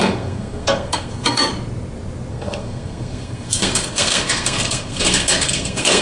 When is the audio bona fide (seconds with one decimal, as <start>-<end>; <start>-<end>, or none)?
1.5-2.3